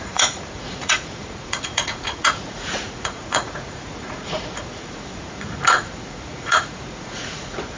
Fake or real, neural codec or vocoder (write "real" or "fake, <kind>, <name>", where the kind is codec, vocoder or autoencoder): fake, vocoder, Vocos